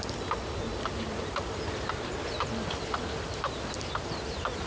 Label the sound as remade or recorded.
remade